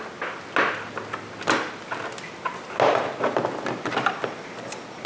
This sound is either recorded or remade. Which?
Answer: recorded